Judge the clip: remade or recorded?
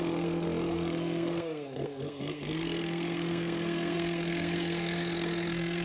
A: remade